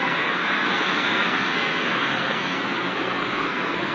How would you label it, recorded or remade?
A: remade